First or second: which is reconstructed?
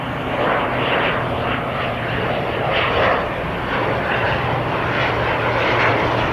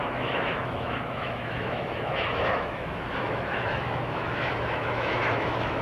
second